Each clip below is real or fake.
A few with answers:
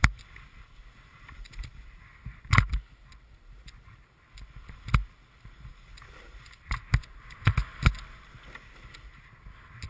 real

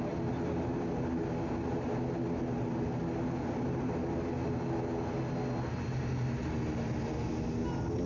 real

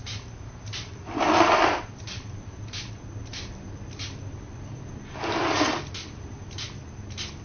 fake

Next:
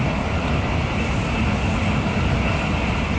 real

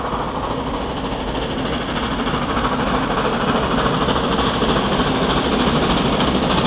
real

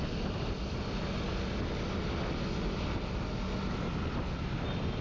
real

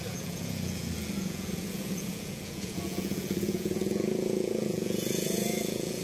fake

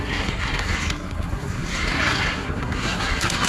fake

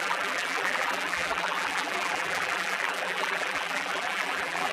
fake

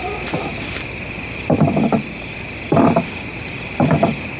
real